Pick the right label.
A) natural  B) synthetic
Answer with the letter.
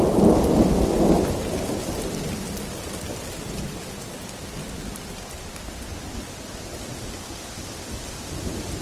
A